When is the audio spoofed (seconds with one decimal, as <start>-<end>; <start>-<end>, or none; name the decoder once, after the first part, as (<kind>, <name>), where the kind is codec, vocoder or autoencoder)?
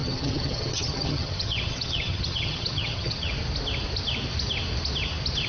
0.0-3.3 (vocoder, HiFi-GAN)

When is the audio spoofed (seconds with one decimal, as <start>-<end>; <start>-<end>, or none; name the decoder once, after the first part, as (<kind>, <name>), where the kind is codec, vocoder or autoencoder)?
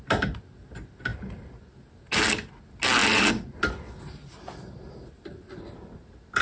none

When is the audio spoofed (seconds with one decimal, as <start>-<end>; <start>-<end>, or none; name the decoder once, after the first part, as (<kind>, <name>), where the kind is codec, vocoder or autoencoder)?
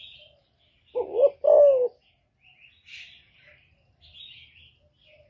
none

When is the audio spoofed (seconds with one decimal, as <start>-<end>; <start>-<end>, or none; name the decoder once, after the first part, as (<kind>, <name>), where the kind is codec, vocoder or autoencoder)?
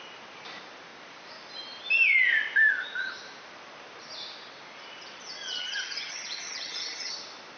5.6-7.1 (vocoder, HiFi-GAN)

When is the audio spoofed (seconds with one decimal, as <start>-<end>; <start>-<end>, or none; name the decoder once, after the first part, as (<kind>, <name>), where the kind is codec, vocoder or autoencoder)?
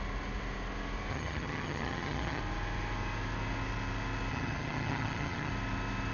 1.1-2.4 (vocoder, HiFi-GAN); 4.3-5.5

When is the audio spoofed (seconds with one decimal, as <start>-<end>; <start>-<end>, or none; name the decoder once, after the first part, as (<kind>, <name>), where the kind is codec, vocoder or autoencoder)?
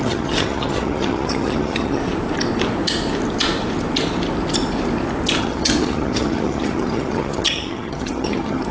0.0-2.0 (vocoder, HiFi-GAN); 5.4-8.7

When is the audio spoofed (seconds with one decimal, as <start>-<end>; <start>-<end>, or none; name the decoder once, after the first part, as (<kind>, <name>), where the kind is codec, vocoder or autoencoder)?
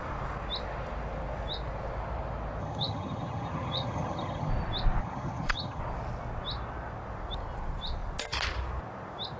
2.6-4.5 (vocoder, HiFi-GAN); 5.0-5.8